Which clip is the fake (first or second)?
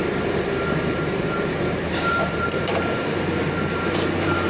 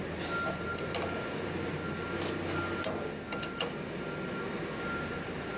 first